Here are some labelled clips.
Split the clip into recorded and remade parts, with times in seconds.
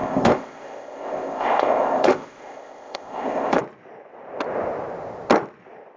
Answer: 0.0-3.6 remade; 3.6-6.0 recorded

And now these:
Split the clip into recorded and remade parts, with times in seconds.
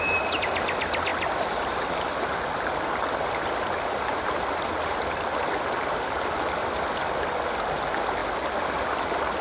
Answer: 0.0-9.4 recorded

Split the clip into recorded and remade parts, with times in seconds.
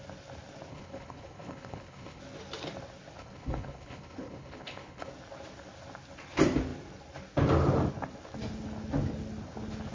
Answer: 0.0-0.7 recorded; 0.7-2.2 remade; 2.2-3.2 recorded; 3.2-5.1 remade; 5.1-9.9 recorded